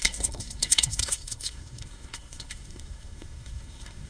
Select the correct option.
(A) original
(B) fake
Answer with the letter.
B